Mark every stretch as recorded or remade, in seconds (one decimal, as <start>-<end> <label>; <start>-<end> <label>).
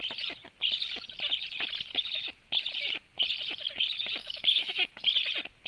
0.0-4.2 recorded; 4.2-4.9 remade; 4.9-5.7 recorded